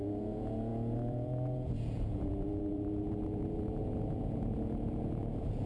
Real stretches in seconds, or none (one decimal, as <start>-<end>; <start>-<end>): none

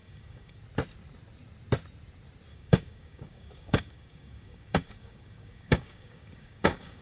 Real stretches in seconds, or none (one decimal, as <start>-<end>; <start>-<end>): 0.6-2.5

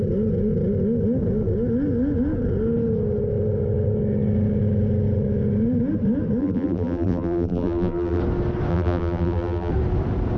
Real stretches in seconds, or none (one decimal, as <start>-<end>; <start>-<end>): 0.0-6.4; 8.2-8.7; 9.7-10.4

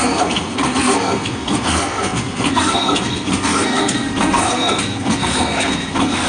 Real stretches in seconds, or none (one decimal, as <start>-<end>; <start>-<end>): none

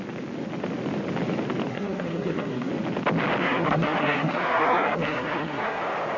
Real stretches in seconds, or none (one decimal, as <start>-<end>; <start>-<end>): 0.0-1.7; 2.7-3.4; 5.8-6.2

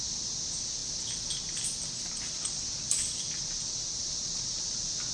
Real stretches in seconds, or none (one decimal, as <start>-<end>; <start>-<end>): 0.0-5.1

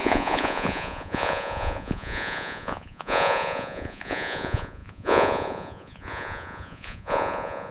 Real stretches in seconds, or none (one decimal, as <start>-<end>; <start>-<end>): none

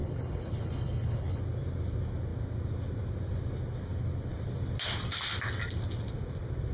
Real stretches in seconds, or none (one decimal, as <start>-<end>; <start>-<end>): 1.4-6.7